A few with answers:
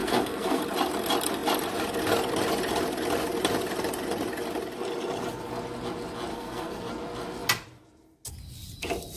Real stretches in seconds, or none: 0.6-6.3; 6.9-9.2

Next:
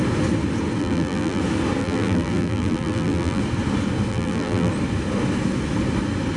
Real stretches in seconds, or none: 0.0-0.8; 1.4-1.8; 3.4-4.1; 4.7-6.4

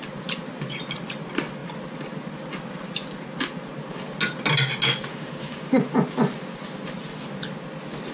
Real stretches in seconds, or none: 0.0-5.1; 5.7-8.1

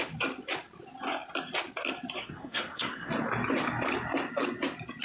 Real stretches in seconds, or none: 0.0-2.2; 3.1-5.0

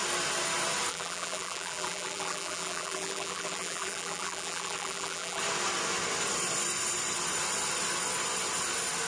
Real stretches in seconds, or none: 0.0-0.9; 5.4-9.1

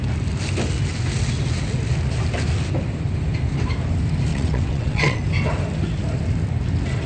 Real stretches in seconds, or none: 0.0-4.3; 5.2-7.1

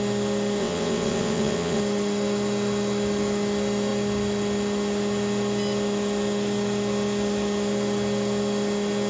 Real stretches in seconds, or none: 0.0-0.6; 1.8-9.1

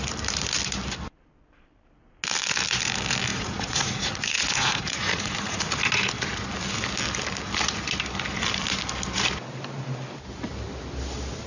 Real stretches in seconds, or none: 0.0-3.3; 5.6-11.5